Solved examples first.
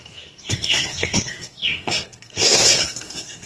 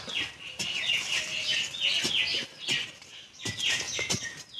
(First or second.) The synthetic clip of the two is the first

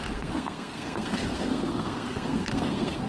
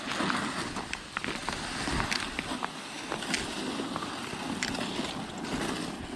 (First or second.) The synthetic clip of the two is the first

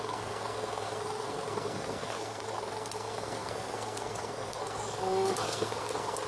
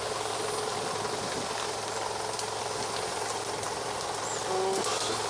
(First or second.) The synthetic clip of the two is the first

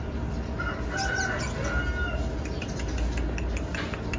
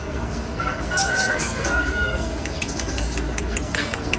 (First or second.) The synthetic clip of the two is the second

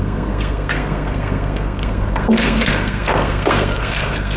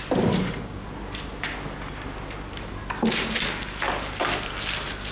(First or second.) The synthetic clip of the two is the first